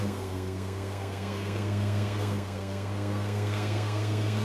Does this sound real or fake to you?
fake